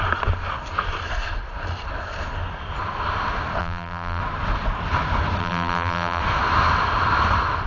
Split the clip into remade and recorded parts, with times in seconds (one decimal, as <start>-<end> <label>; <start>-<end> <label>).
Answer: 0.0-3.6 recorded; 3.6-4.2 remade; 4.2-5.4 recorded; 5.4-6.2 remade; 6.2-7.7 recorded